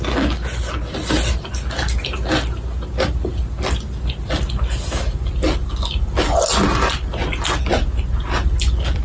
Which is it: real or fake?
real